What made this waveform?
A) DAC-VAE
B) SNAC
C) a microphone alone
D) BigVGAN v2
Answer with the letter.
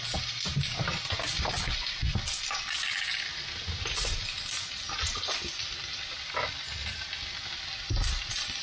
C